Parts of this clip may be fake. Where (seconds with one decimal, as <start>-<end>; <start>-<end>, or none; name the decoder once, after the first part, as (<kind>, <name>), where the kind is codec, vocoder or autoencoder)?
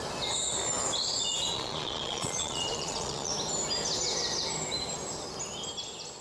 1.5-3.3 (vocoder, Vocos)